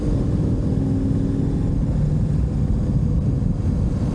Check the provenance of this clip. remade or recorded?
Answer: recorded